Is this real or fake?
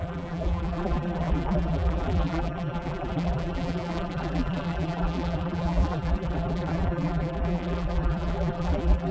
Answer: fake